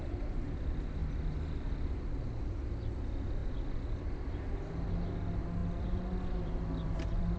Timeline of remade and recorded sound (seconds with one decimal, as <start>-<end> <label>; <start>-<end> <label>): 0.0-5.6 recorded; 5.6-7.4 remade